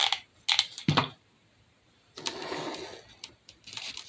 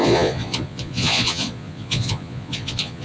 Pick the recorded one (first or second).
first